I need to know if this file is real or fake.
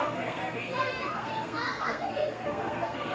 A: fake